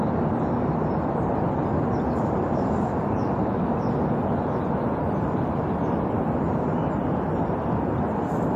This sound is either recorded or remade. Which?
recorded